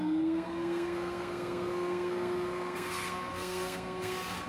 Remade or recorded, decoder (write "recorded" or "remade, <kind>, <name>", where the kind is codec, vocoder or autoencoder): remade, codec, SNAC